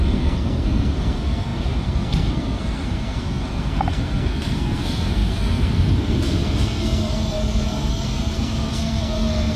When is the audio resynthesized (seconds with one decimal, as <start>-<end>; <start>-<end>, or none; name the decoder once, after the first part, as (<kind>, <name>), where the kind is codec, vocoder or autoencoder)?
0.0-9.6 (codec, SNAC)